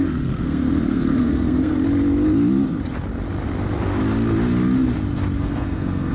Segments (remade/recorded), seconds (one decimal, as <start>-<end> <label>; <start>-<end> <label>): 0.0-1.7 remade; 1.7-5.4 recorded; 5.4-6.1 remade